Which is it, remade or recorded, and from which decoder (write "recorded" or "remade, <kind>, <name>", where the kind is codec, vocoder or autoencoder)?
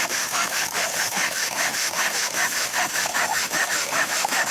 remade, autoencoder, DAC-VAE